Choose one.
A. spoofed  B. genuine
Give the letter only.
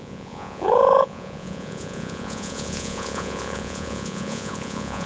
A